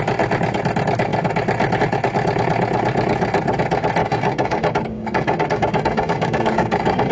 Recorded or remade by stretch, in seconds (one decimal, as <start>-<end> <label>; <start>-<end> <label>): 0.0-4.0 recorded; 4.0-7.1 remade